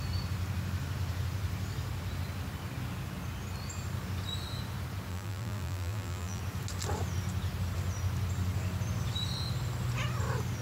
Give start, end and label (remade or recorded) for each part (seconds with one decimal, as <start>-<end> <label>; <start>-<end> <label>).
0.0-5.1 recorded; 5.1-6.4 remade; 6.4-10.6 recorded